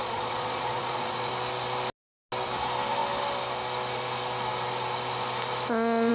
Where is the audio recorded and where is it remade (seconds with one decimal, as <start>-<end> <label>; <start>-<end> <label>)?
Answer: 0.0-1.3 remade; 1.3-6.1 recorded